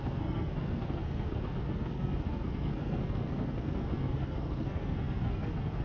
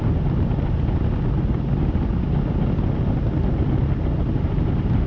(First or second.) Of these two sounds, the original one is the second